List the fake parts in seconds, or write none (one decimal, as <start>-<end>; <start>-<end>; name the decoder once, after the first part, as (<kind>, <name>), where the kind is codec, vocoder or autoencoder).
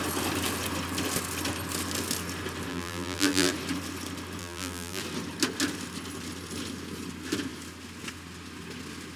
2.7-3.5 (vocoder, BigVGAN v2); 4.4-5.0